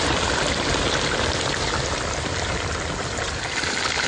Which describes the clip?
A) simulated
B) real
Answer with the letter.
B